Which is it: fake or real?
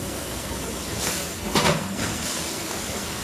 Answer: fake